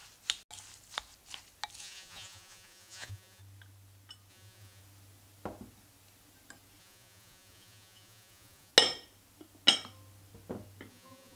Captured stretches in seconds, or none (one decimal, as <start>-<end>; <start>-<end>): 0.0-1.8; 3.4-4.3; 4.8-6.8; 8.7-10.9